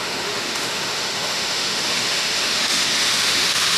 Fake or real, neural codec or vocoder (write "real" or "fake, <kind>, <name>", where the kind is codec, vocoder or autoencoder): fake, autoencoder, DAC-VAE